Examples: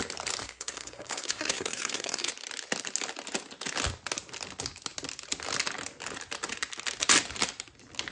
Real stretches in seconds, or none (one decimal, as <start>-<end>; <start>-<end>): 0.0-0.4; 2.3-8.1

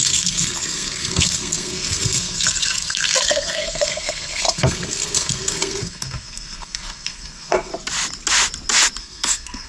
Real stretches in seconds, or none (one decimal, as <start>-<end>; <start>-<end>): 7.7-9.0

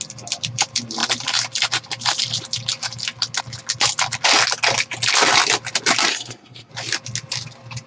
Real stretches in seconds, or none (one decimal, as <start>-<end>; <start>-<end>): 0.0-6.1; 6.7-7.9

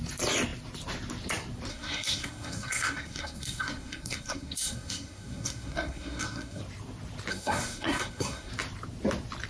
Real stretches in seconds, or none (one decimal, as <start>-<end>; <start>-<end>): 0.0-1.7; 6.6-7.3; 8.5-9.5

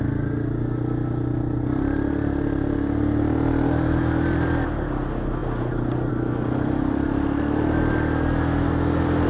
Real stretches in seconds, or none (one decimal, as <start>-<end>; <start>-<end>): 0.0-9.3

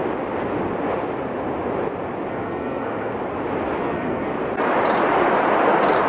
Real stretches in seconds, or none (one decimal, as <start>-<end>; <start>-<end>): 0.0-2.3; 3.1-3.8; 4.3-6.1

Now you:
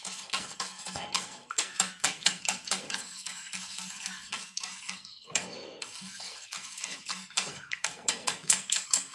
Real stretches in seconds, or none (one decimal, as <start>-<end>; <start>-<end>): none